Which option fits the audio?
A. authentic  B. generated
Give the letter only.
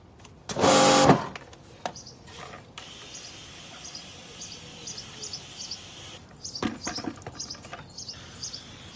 A